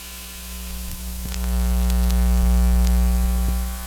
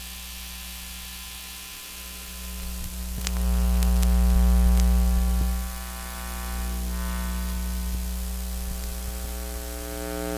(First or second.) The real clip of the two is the second